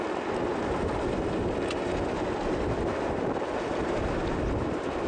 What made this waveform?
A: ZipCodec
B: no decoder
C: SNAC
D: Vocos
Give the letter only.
B